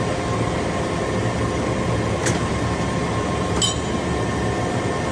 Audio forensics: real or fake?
real